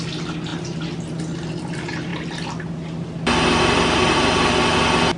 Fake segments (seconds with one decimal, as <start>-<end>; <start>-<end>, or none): none